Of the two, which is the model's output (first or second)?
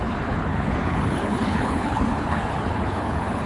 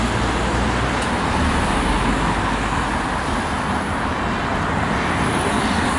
first